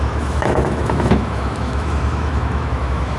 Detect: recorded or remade remade